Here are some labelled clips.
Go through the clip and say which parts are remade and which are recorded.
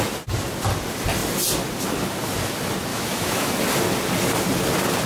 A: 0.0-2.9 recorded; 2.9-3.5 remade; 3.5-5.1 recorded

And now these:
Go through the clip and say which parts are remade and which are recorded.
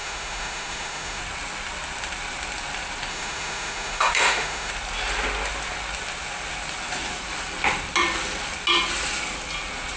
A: 0.0-1.2 remade; 1.2-3.1 recorded; 3.1-4.7 remade; 4.7-10.0 recorded